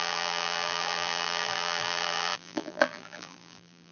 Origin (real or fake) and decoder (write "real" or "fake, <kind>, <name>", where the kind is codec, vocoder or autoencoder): fake, vocoder, BigVGAN v2